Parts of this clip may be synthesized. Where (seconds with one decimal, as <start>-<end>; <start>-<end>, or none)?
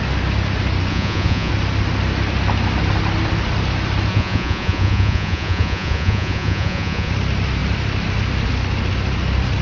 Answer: 0.9-1.5; 4.1-7.1